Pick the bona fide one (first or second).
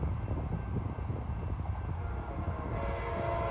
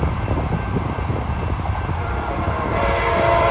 first